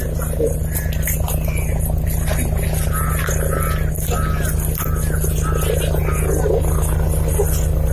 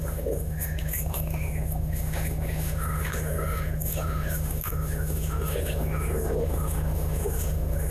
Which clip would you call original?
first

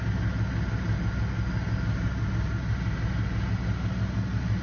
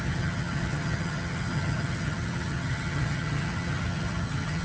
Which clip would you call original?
first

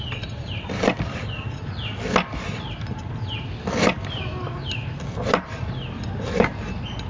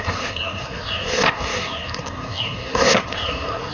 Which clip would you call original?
first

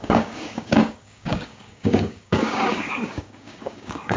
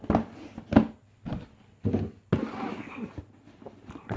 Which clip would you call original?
second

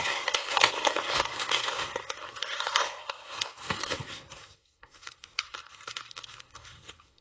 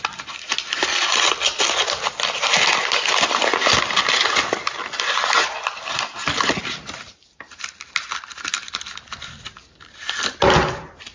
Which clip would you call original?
second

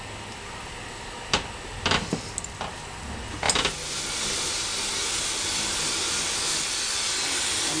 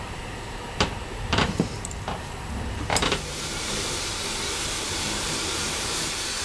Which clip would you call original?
first